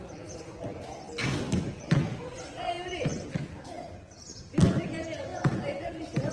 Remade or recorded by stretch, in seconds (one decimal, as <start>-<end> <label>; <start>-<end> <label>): 0.0-1.2 recorded; 1.2-1.8 remade; 1.8-6.3 recorded